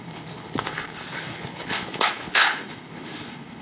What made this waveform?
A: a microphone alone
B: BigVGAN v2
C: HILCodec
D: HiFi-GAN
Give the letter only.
C